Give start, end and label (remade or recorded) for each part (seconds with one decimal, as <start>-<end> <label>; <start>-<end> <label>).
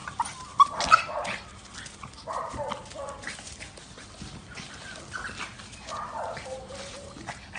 0.0-1.0 recorded; 1.0-1.6 remade; 1.6-5.6 recorded; 5.6-7.6 remade